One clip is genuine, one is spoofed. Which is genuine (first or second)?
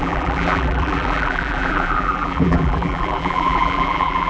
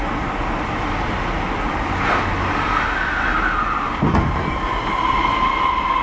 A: second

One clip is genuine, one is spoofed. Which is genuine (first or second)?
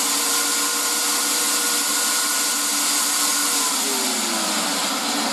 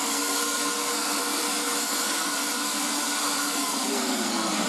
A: first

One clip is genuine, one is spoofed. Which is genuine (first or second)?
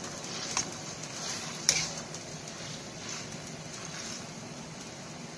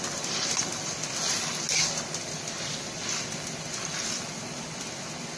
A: second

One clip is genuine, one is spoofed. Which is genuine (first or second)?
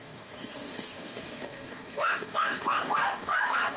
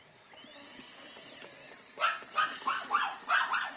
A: second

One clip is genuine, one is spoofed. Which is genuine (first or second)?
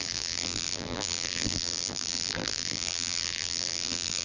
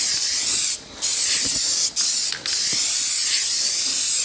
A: second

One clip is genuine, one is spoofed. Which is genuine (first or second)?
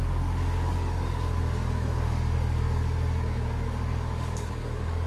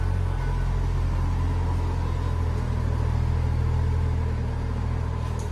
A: second